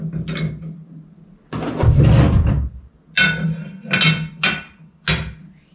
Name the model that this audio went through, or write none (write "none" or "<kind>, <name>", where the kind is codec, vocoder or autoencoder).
none